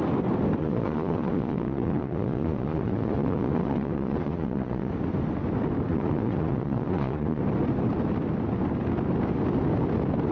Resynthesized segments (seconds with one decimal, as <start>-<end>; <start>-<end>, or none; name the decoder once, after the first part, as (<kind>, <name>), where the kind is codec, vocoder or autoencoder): 0.6-4.9 (vocoder, Vocos); 5.9-7.4